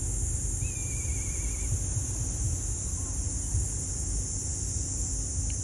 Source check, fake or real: real